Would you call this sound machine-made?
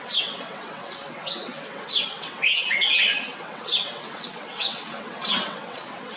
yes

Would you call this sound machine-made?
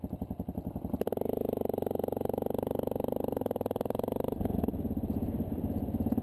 no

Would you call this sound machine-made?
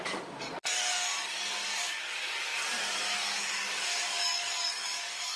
yes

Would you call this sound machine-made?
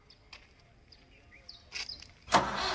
no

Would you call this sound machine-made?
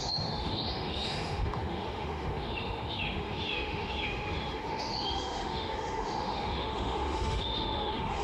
yes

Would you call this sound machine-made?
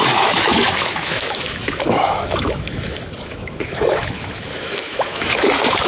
yes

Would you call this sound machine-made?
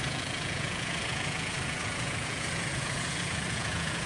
yes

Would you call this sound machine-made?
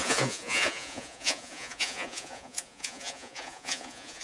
yes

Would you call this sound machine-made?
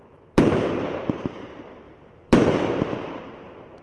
yes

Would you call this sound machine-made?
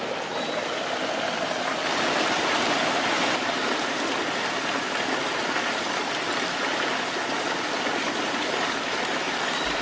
no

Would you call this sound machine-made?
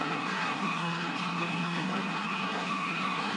yes